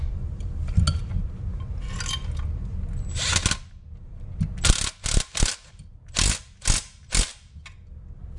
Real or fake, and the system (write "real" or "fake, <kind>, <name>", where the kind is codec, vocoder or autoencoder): real